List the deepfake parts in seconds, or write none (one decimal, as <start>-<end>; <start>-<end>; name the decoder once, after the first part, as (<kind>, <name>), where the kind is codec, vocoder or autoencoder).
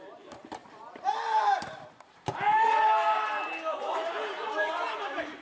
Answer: 0.0-0.6 (vocoder, BigVGAN v2); 3.8-5.4